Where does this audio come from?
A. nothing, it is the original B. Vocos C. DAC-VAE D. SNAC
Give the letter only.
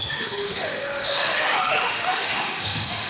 C